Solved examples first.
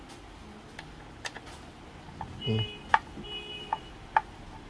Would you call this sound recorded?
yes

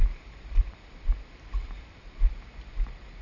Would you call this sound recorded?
no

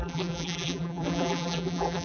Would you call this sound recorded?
no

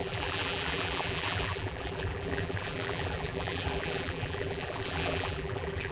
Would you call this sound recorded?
no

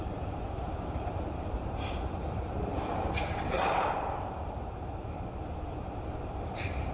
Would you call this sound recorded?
no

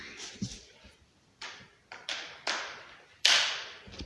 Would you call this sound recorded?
no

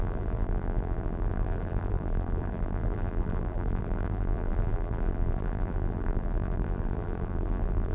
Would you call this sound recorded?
no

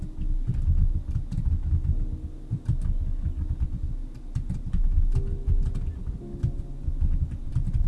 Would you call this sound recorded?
yes